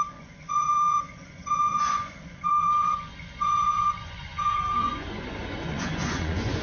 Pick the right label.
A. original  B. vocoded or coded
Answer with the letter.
B